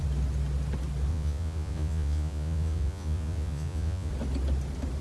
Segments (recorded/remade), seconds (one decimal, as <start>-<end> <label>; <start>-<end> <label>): 0.0-1.1 recorded; 1.1-4.1 remade; 4.1-5.0 recorded